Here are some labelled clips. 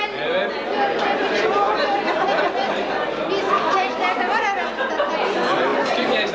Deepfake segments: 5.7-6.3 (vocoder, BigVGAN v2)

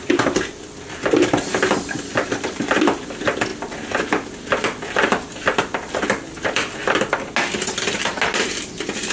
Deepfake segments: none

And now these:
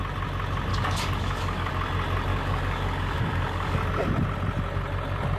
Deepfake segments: 0.7-1.7 (codec, DAC); 2.3-3.8

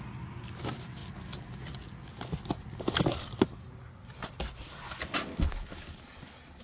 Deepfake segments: none